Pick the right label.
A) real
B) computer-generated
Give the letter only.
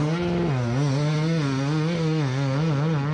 A